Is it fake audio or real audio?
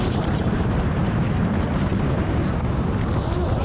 fake